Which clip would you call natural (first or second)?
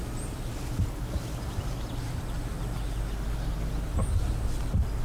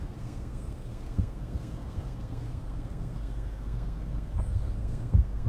first